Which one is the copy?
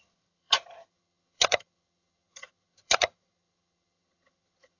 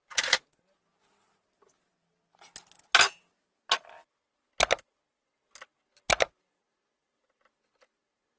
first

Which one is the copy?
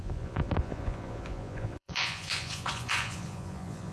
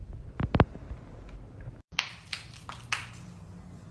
first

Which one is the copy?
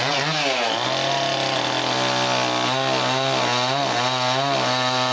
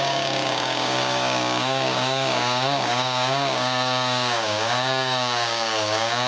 second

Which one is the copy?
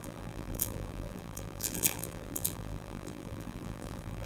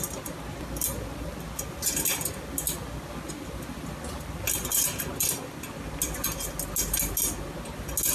first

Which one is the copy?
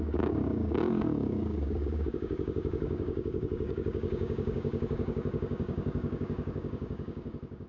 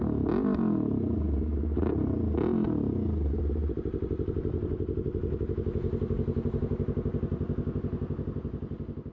first